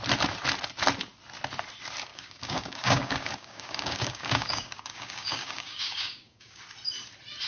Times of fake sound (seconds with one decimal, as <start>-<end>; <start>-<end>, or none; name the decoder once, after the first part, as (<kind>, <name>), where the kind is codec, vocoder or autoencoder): 2.1-6.6 (codec, DAC)